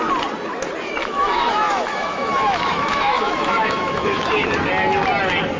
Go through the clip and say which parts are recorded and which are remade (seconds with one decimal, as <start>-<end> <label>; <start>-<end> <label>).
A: 0.0-1.0 recorded; 1.0-4.4 remade; 4.4-5.6 recorded